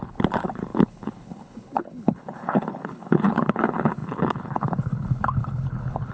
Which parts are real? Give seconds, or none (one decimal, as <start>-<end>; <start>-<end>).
none